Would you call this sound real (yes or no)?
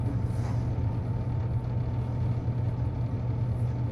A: yes